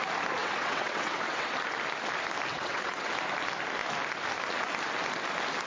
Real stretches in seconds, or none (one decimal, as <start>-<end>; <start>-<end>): 0.0-0.4; 1.5-2.5; 3.1-5.7